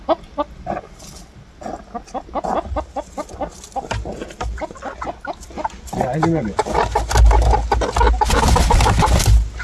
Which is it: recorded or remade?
recorded